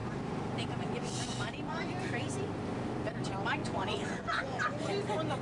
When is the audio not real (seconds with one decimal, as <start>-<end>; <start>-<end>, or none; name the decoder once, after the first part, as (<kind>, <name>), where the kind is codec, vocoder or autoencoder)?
3.6-4.6 (vocoder, Vocos)